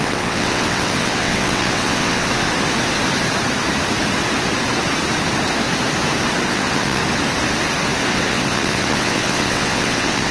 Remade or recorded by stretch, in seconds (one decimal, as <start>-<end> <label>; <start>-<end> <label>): 0.0-2.3 remade; 2.3-6.5 recorded; 6.5-7.0 remade; 7.0-8.1 recorded; 8.1-10.3 remade